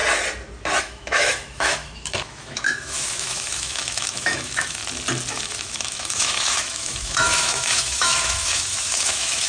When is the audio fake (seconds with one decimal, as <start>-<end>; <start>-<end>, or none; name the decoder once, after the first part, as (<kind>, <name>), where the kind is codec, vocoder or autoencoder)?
0.8-4.8 (autoencoder, DAC-VAE); 5.3-9.5